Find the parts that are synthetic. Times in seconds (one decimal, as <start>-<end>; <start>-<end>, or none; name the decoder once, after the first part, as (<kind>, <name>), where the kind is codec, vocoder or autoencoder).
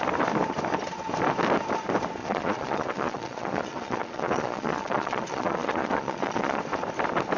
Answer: 2.2-6.6 (vocoder, Vocos)